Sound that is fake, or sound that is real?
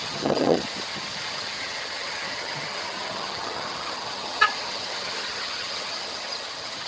fake